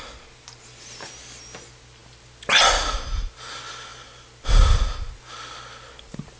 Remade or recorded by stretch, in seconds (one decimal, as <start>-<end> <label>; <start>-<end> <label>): 0.0-6.4 recorded